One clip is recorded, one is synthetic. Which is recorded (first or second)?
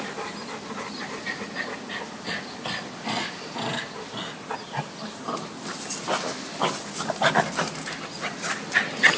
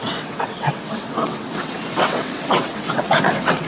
first